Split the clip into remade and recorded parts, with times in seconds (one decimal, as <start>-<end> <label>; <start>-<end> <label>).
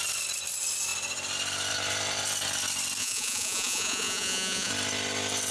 0.0-3.0 recorded; 3.0-4.7 remade; 4.7-5.5 recorded